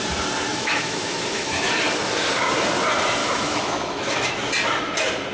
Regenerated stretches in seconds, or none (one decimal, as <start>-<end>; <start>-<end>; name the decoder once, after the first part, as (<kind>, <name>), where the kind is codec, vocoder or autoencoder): 0.5-1.7 (autoencoder, DAC-VAE); 3.2-4.5